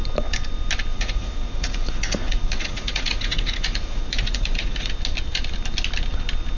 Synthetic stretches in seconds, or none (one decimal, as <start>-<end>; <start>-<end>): 0.9-4.9